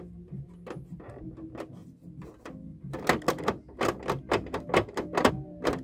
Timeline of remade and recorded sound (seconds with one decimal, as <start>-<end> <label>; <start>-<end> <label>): 0.0-5.8 recorded